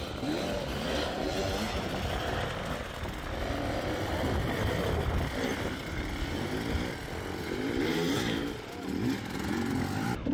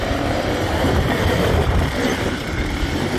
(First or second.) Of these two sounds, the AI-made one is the second